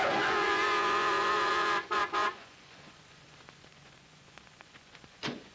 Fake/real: fake